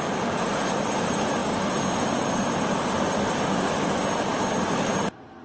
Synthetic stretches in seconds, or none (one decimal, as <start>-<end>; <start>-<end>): none